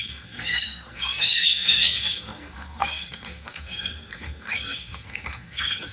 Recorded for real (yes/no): no